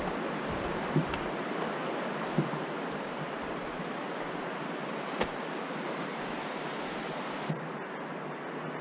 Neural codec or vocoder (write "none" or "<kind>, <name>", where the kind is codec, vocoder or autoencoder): none